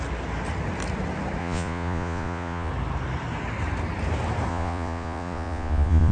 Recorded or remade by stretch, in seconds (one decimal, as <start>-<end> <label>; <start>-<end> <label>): 0.0-1.4 recorded; 1.4-2.7 remade; 2.7-4.5 recorded; 4.5-6.1 remade